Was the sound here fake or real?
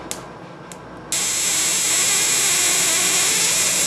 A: real